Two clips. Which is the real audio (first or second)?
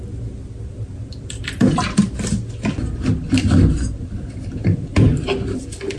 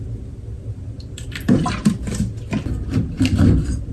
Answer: first